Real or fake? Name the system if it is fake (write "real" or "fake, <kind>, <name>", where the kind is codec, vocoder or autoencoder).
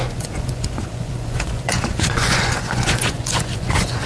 fake, vocoder, Vocos